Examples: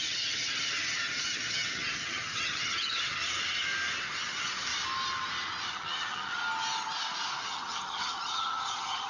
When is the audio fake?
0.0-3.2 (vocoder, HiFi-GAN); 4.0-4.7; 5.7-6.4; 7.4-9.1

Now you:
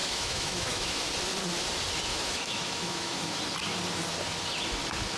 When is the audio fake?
0.0-1.1 (autoencoder, DAC-VAE); 2.1-3.4